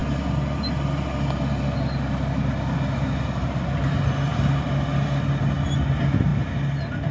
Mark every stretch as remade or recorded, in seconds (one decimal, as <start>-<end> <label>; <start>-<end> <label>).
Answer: 0.0-7.1 recorded